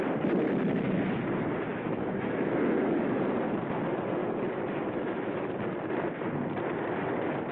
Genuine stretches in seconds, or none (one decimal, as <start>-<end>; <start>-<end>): 0.0-1.7; 3.2-4.2; 5.5-7.5